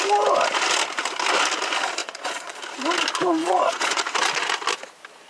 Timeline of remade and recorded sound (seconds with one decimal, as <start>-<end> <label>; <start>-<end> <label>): 0.0-2.0 recorded; 2.0-2.6 remade; 2.6-3.4 recorded; 3.4-4.0 remade; 4.0-5.3 recorded